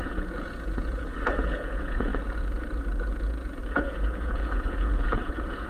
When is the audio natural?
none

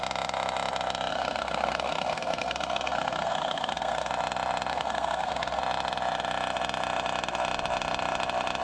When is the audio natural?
0.0-1.1; 4.1-4.7; 5.6-8.6

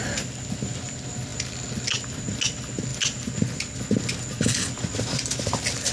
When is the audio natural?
0.0-5.9

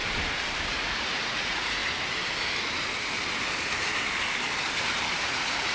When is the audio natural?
0.0-0.7; 1.8-5.2

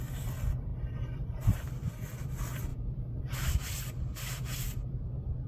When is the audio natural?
0.0-2.7; 3.2-5.5

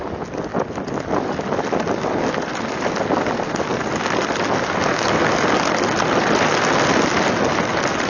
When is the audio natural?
0.0-8.1

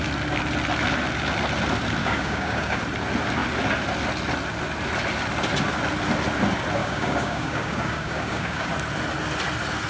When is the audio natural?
0.0-2.0; 2.8-6.8; 8.7-9.9

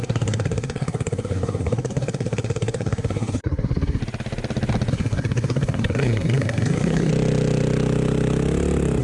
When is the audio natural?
4.0-4.9; 7.1-9.0